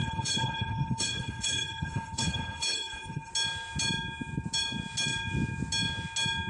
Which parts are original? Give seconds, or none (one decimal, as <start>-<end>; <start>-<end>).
3.3-6.5